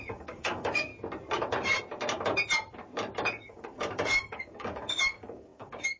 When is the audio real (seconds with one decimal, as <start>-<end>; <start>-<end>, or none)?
0.9-3.3